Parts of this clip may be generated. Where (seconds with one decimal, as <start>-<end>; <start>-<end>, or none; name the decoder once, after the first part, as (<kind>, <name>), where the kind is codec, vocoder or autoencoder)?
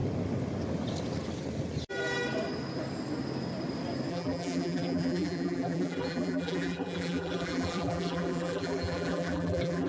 4.1-9.9 (vocoder, BigVGAN v2)